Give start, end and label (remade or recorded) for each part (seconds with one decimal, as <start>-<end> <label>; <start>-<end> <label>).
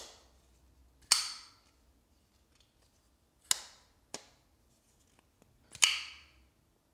0.0-6.9 recorded